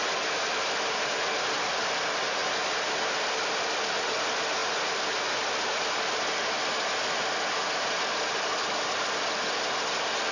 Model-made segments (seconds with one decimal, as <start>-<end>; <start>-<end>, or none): none